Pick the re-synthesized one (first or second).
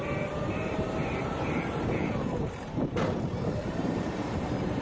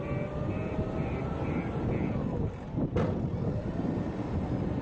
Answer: first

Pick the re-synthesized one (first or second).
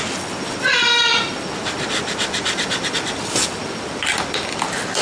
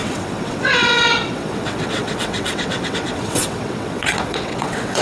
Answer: second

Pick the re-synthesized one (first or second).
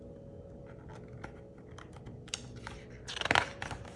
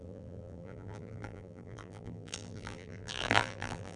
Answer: second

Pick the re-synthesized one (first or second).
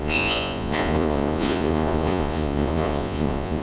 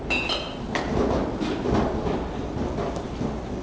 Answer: first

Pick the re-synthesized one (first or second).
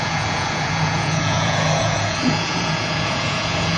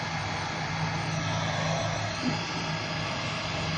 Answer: first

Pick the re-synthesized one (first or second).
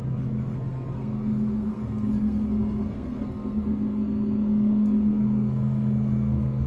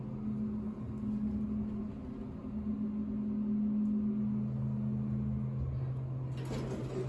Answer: first